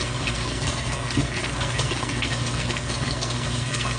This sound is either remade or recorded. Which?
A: remade